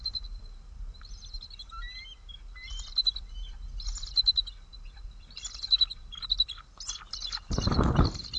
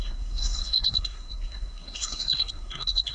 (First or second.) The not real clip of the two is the second